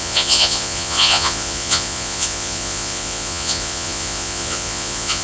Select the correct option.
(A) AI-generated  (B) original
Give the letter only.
A